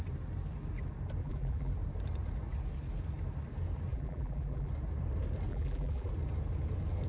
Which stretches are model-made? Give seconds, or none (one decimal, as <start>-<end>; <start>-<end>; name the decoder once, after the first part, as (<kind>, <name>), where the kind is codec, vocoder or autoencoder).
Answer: 1.2-1.7 (vocoder, BigVGAN v2); 3.9-4.7; 5.5-6.1